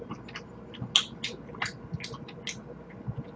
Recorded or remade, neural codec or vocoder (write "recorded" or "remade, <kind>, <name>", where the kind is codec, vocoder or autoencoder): recorded